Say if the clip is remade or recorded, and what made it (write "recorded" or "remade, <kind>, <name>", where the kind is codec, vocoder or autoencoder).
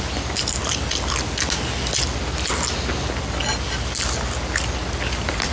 recorded